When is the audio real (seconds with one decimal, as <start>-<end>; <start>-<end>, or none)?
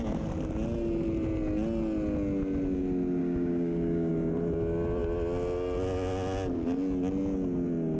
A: 0.0-3.2; 4.1-8.0